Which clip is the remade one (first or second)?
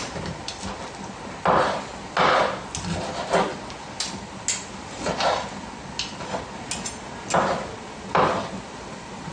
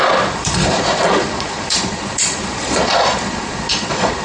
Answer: second